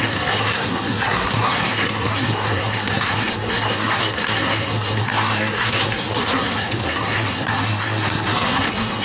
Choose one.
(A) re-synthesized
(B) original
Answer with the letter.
A